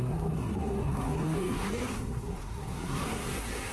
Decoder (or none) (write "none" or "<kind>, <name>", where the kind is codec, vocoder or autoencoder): codec, SNAC